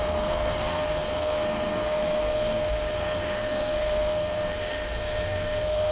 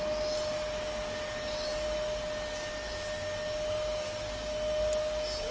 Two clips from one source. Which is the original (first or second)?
second